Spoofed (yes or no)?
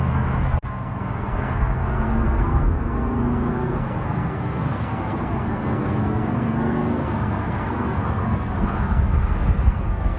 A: yes